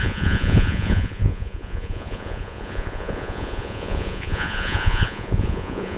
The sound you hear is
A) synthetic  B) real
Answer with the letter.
A